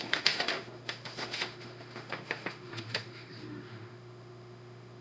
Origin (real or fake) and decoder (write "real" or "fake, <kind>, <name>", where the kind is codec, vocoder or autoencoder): fake, autoencoder, DAC-VAE